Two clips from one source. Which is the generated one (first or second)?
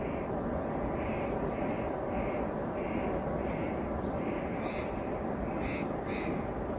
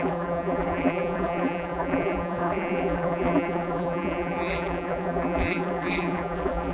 second